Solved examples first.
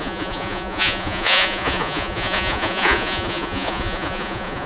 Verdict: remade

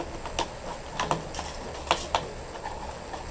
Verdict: recorded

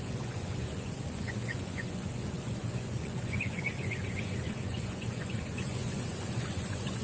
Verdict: remade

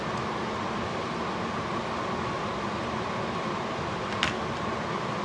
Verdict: recorded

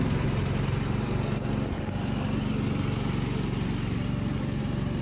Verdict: recorded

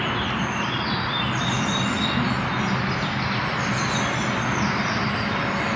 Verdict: recorded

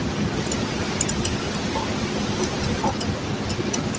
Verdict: recorded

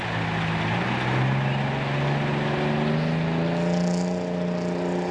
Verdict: recorded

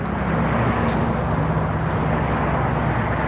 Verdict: recorded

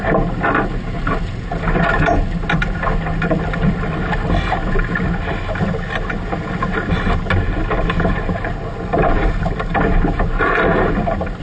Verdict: recorded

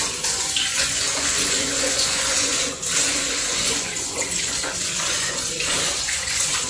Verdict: remade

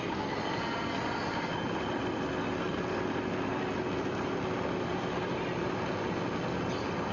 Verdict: recorded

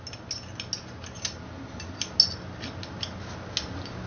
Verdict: recorded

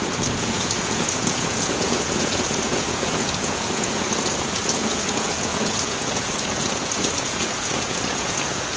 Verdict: remade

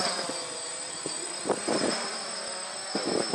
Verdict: recorded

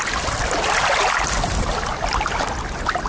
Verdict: recorded